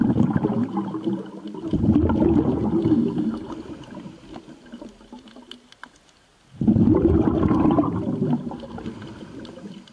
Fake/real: real